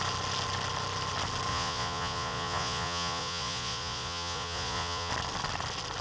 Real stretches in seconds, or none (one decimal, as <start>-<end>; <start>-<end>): 0.0-1.5; 5.1-6.0